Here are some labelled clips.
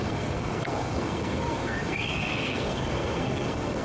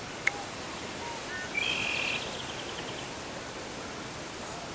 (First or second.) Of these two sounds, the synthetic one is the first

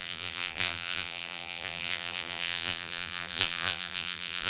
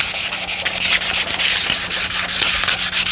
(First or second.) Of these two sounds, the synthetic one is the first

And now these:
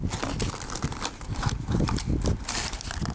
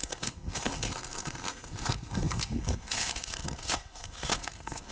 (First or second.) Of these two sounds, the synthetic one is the second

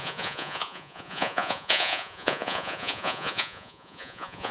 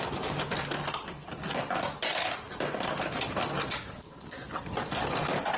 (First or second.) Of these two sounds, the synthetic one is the first